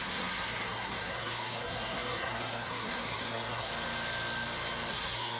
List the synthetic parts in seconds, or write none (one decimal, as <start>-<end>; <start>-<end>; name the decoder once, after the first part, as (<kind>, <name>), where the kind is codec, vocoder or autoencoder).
0.0-3.7 (codec, SNAC); 4.9-5.4